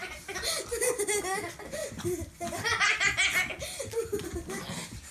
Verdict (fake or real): real